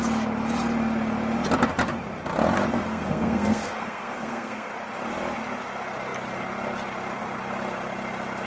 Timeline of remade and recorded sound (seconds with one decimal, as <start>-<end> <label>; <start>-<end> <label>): 0.0-2.9 recorded; 2.9-4.7 remade; 4.7-8.5 recorded